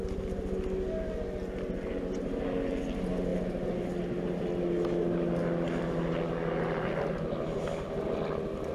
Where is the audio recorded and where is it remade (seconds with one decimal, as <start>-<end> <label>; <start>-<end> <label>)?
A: 0.0-8.7 recorded